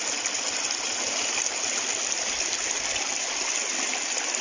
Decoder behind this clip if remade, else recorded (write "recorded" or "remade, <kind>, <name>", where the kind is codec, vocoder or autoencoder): recorded